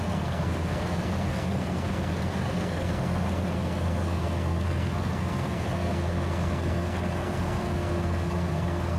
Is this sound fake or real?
fake